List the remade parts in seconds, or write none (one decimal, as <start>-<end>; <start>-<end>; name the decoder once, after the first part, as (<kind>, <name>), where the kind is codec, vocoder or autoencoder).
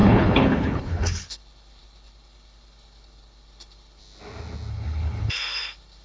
0.0-4.0 (codec, HILCodec); 4.7-6.0